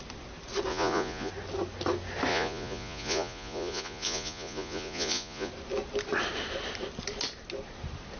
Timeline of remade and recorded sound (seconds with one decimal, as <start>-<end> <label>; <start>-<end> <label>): 0.0-0.7 recorded; 0.7-1.3 remade; 1.3-2.3 recorded; 2.3-5.5 remade; 5.5-8.2 recorded